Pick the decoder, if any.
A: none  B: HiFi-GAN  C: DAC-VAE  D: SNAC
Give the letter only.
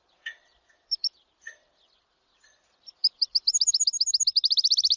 A